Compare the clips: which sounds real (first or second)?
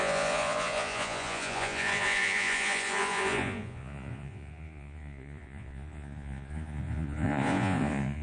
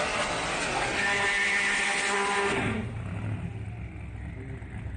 second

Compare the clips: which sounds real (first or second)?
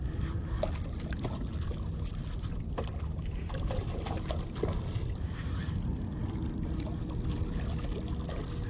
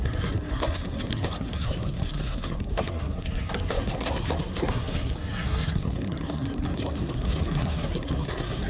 first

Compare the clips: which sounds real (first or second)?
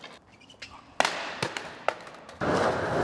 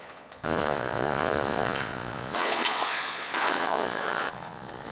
first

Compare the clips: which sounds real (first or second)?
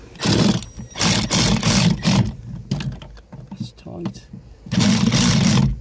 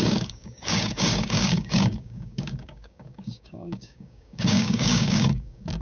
first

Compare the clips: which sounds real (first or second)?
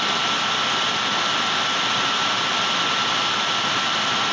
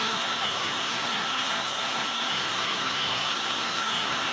first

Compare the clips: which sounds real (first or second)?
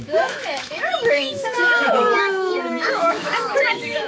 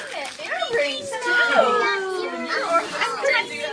second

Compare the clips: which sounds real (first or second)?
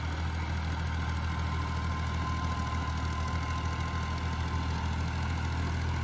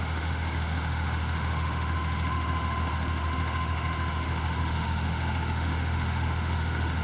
first